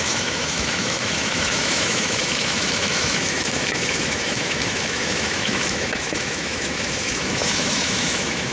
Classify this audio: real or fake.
fake